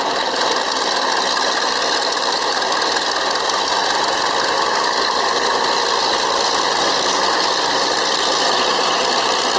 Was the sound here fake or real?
real